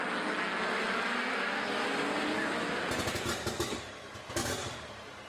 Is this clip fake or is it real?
real